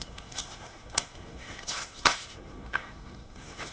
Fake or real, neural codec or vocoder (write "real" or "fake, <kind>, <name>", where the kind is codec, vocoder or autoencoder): fake, codec, SNAC